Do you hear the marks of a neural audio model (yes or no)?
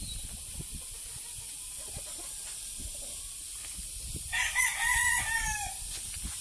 no